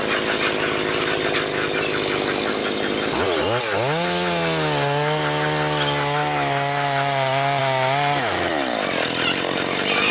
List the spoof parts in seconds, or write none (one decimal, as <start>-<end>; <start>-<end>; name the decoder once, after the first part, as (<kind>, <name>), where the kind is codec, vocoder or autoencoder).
none